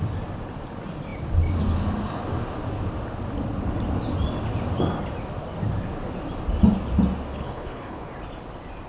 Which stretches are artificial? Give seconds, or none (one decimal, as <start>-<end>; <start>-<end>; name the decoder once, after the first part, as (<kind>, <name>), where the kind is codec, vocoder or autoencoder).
7.3-8.1 (codec, HILCodec)